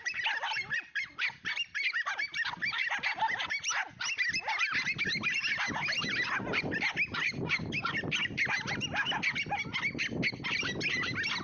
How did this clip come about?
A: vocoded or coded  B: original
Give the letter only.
B